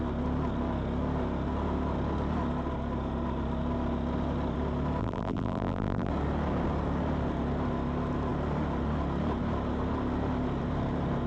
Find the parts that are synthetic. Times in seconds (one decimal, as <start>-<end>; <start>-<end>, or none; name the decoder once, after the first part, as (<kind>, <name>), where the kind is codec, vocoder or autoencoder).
5.0-6.1 (vocoder, BigVGAN v2)